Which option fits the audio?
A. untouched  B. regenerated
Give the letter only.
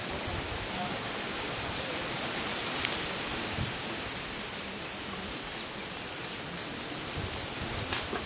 A